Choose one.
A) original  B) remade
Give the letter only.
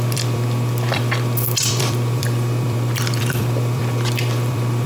B